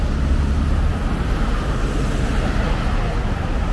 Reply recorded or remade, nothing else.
recorded